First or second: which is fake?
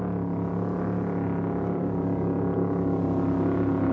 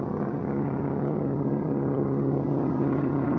second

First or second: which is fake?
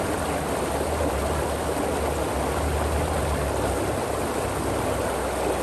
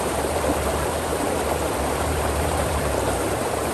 second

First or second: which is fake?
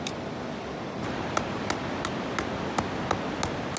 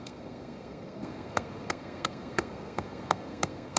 second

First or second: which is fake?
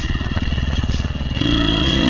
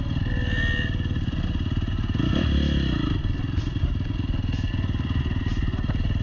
first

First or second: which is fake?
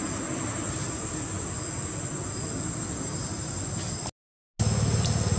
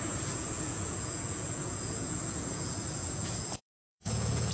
second